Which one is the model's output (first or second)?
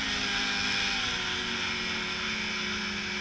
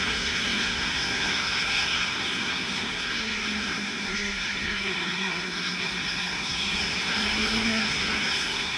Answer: second